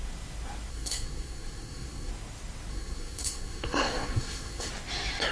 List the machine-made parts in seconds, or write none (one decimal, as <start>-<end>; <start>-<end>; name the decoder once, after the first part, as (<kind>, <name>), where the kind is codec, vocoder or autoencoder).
0.7-2.1 (codec, SNAC); 2.7-4.7